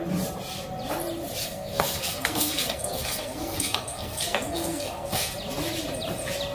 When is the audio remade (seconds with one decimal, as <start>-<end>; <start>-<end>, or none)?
1.4-5.3